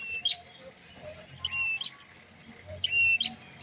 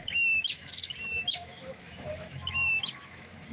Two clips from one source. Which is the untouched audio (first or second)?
first